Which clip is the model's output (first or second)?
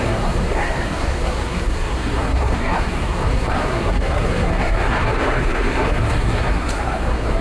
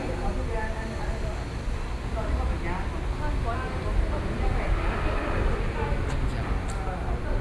first